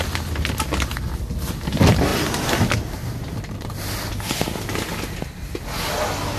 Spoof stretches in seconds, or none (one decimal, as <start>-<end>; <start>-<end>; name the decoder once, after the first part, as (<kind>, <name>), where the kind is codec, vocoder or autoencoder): none

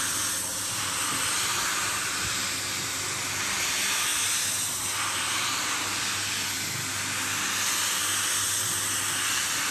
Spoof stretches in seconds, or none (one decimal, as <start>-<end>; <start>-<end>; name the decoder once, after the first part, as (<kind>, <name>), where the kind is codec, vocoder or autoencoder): none

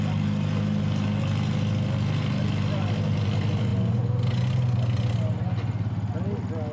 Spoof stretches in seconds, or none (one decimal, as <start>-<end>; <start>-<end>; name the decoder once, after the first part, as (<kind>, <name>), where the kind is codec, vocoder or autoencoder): none

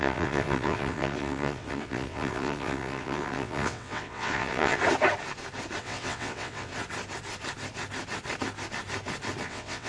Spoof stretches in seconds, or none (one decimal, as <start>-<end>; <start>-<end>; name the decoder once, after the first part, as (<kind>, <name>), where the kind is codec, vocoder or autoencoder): 0.0-4.8 (vocoder, WaveNeXt); 5.8-6.7; 9.4-9.9

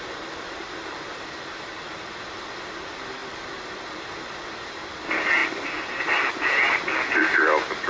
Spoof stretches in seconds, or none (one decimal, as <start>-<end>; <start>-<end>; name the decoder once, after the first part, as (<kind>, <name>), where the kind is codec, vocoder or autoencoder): 0.0-7.9 (vocoder, BigVGAN v2)

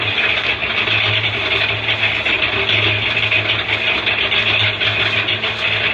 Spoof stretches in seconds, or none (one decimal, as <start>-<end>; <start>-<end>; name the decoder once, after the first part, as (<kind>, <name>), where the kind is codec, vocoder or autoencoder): none